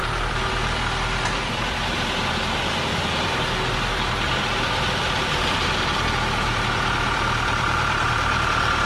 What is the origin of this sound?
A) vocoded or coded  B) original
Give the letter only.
A